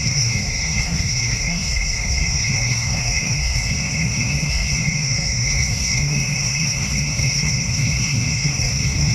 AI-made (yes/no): yes